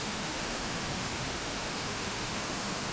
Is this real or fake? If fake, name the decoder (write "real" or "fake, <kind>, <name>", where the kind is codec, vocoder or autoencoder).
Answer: fake, autoencoder, DAC-VAE